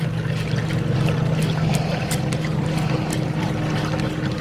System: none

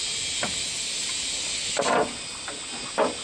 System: none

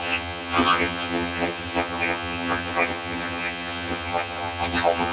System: vocoder, HiFi-GAN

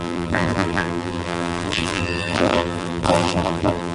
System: vocoder, BigVGAN v2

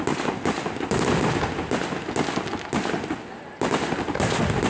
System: none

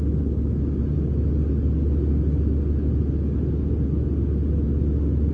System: none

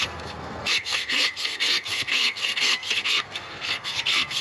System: codec, SNAC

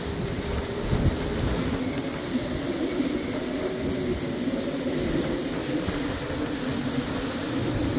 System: none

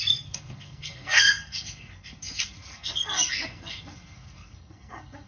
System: codec, SNAC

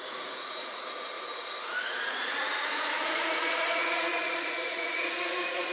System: vocoder, Vocos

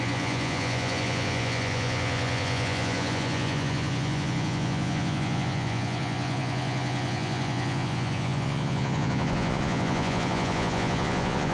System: vocoder, Vocos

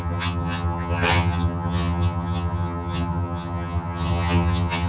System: vocoder, HiFi-GAN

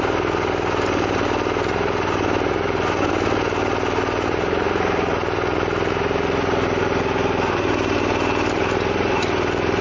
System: vocoder, BigVGAN v2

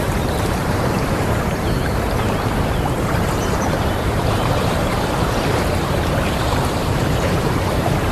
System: vocoder, BigVGAN v2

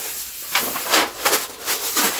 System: none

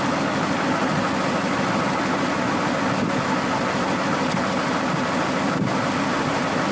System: none